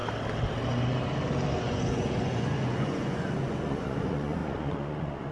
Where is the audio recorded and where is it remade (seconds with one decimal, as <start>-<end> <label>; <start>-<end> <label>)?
0.0-1.6 recorded; 1.6-5.3 remade